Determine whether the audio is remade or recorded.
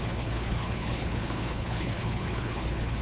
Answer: remade